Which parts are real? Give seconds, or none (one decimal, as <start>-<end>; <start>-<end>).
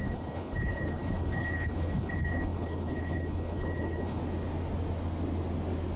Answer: 4.2-6.0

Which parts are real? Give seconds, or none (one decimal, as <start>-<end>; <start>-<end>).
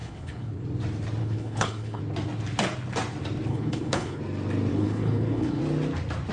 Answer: 0.6-1.2; 2.0-3.5; 4.2-4.7; 5.6-6.3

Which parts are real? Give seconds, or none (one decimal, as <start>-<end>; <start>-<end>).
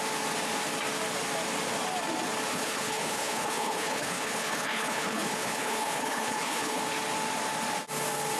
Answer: 0.0-2.5; 6.8-8.4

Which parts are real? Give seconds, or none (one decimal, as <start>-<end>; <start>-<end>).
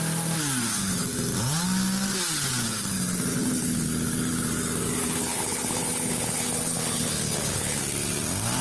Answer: 0.0-3.3; 3.9-5.0; 7.8-8.6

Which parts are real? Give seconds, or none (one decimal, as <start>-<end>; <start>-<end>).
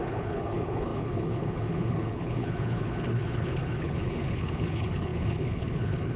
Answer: none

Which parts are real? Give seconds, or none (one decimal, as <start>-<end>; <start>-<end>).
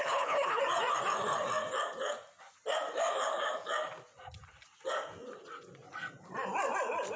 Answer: 0.6-7.2